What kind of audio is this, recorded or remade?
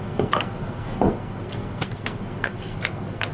remade